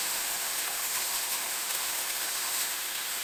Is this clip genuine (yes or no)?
no